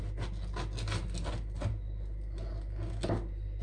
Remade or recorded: recorded